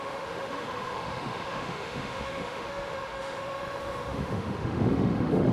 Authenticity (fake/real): fake